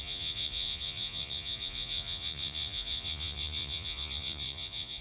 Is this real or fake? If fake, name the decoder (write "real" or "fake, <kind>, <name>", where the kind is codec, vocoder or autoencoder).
fake, vocoder, Vocos